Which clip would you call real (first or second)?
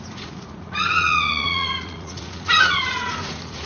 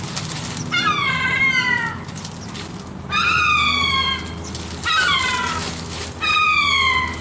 second